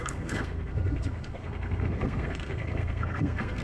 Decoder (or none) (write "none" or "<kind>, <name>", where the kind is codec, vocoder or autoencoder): codec, SNAC